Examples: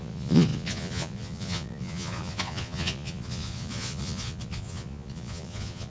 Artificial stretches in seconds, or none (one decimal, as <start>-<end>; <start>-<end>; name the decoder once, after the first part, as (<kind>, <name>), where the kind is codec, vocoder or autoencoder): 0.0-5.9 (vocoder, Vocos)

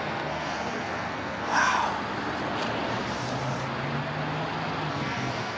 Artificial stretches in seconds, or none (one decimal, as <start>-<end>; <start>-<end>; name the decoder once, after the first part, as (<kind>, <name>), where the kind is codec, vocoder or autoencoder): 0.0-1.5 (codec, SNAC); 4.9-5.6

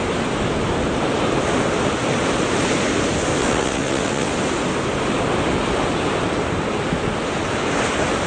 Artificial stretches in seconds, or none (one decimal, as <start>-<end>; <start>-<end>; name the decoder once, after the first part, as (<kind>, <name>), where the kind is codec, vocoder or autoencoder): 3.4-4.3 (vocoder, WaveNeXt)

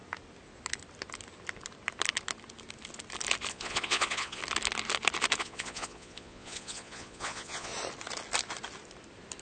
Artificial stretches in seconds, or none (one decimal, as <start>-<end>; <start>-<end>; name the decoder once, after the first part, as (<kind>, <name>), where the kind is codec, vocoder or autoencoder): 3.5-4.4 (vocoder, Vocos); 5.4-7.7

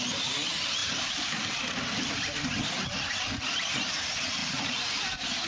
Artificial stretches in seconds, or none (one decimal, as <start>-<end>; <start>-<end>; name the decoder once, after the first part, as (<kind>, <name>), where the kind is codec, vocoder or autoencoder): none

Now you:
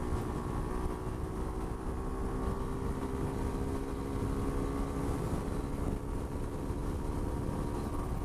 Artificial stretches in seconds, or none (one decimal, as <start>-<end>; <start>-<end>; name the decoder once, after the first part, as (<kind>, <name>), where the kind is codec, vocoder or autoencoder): 6.8-7.5 (vocoder, BigVGAN v2)

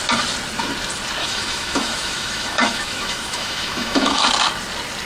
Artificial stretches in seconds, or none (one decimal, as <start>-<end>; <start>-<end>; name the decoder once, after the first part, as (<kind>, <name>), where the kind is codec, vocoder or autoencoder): 1.2-4.3 (autoencoder, DAC-VAE)

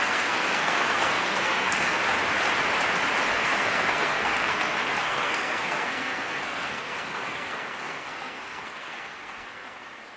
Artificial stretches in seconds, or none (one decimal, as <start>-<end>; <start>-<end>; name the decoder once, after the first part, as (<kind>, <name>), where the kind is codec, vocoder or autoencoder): 0.0-2.0 (codec, SNAC); 3.3-10.2